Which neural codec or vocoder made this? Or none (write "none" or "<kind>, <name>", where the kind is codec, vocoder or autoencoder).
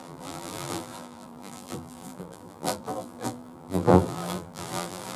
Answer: vocoder, BigVGAN v2